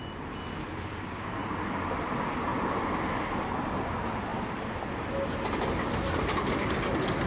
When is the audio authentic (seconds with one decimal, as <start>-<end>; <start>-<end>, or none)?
0.0-7.3